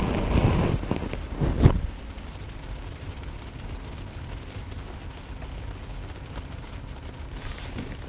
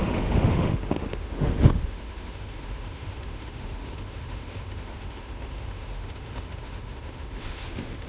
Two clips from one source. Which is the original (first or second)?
first